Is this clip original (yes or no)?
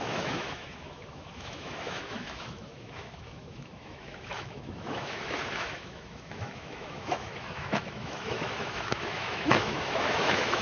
no